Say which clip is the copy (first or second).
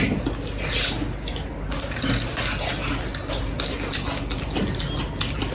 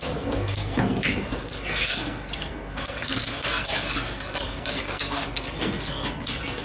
second